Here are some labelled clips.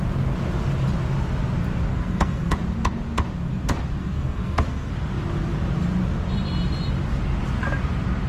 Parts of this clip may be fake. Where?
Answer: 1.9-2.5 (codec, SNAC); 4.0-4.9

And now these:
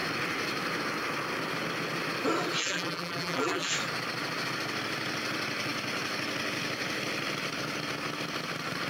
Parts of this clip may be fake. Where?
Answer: 2.6-3.7 (vocoder, BigVGAN v2)

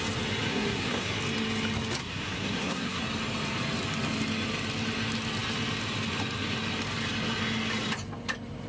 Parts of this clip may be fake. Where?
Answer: 0.5-1.2 (codec, SNAC); 2.0-3.0

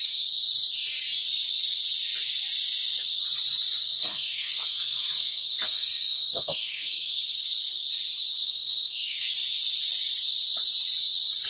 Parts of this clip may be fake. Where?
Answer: 3.8-7.2 (codec, SNAC); 8.4-9.3

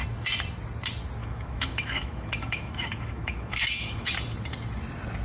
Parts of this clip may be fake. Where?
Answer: 1.2-4.1 (autoencoder, DAC-VAE)

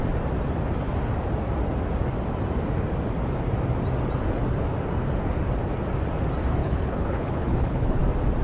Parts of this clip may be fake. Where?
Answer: 6.6-8.0 (codec, HILCodec)

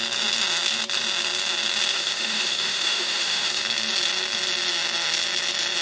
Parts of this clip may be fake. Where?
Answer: 1.9-3.6 (autoencoder, DAC-VAE)